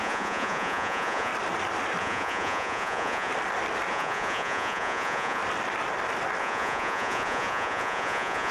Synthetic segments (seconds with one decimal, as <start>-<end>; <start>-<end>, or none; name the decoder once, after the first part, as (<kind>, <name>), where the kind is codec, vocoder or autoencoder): 0.0-1.3 (vocoder, Vocos); 2.0-3.3; 3.9-5.4; 6.4-8.5